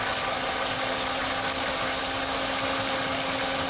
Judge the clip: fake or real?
real